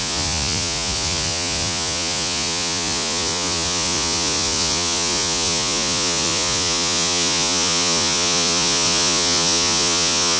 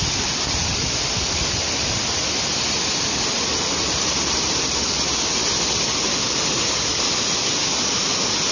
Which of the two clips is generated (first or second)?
first